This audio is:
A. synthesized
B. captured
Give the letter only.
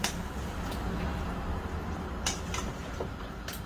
B